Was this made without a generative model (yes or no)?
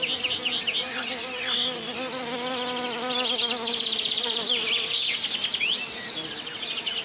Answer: yes